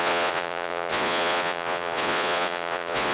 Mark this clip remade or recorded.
remade